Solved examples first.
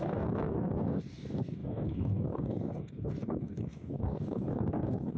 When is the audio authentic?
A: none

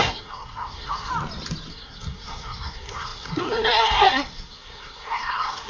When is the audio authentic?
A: 1.1-1.7

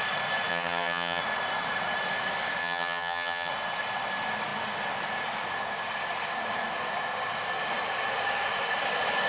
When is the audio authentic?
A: 0.0-0.5; 1.2-2.6; 3.5-9.3